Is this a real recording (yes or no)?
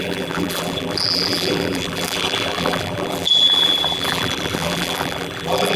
no